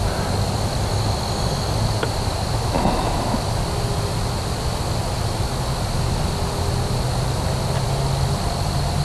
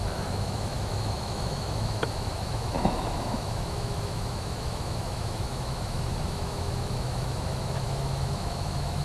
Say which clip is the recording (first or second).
first